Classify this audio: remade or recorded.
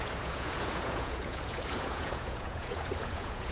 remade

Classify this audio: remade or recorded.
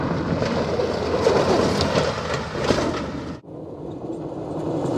recorded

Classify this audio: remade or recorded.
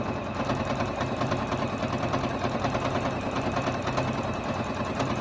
recorded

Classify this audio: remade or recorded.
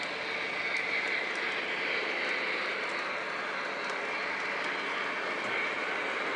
recorded